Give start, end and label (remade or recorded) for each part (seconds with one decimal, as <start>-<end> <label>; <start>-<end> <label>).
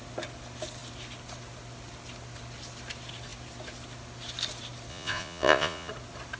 0.0-4.9 recorded; 4.9-5.9 remade; 5.9-6.4 recorded